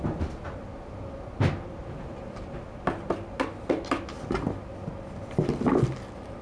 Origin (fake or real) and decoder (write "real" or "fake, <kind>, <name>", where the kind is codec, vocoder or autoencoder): real